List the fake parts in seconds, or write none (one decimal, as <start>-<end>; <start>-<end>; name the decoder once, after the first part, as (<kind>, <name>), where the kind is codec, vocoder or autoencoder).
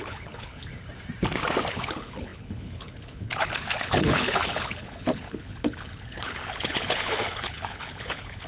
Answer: 0.0-0.7 (codec, HILCodec); 1.7-8.5